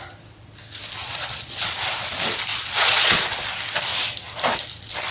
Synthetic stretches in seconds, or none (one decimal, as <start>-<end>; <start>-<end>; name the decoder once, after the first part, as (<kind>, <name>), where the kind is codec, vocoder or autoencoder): 1.0-1.8 (vocoder, Vocos); 2.5-3.2